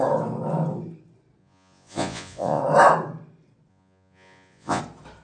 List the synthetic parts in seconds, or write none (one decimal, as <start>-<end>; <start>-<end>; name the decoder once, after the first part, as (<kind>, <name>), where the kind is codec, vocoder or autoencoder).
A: 1.4-2.6 (vocoder, Vocos); 3.7-4.8